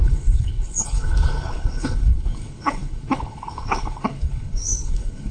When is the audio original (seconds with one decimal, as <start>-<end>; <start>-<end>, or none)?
none